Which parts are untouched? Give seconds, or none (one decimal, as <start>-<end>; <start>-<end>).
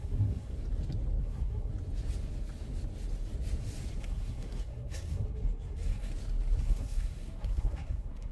0.5-1.2; 1.7-4.0; 6.1-6.6